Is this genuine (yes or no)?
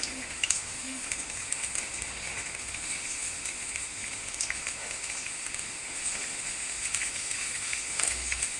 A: no